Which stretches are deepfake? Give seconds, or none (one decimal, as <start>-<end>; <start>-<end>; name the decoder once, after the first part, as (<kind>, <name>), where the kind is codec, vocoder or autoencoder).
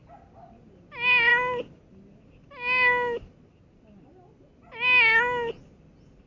none